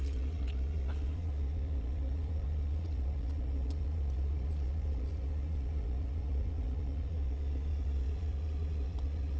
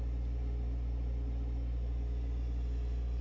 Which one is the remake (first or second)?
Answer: first